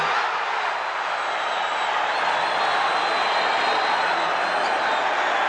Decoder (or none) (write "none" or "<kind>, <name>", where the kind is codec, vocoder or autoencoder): none